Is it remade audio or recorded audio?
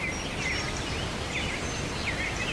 recorded